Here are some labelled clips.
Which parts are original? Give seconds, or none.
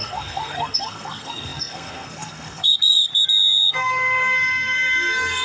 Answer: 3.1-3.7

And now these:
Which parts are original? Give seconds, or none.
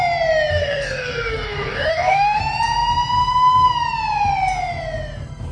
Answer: 0.0-0.5; 2.4-5.5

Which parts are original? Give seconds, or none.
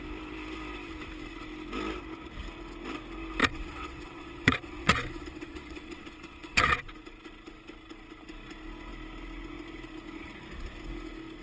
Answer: 0.0-3.4; 6.9-11.4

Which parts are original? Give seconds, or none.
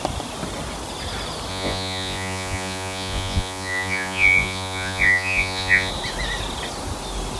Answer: 0.0-1.5; 5.9-7.4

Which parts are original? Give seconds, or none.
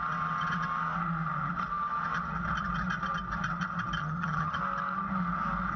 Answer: 0.0-4.0; 4.6-5.8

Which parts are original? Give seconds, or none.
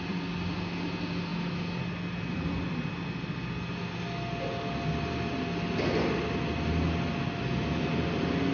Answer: 0.0-8.5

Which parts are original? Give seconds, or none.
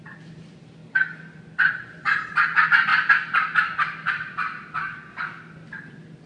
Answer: 0.0-0.8; 1.4-4.8; 5.5-6.3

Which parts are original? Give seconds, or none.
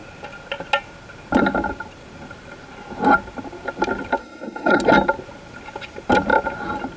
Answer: 0.0-4.2; 4.8-7.0